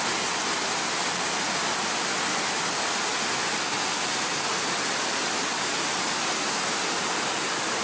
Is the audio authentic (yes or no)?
yes